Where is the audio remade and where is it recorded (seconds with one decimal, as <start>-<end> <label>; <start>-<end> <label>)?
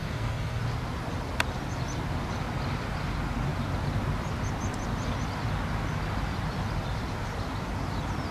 0.0-0.6 remade; 0.6-8.3 recorded